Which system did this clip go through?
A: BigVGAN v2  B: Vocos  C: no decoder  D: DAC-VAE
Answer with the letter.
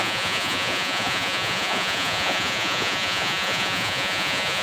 B